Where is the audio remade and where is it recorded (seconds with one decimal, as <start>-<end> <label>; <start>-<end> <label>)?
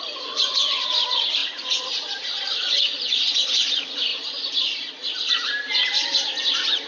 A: 0.0-4.1 remade; 4.1-6.4 recorded; 6.4-6.9 remade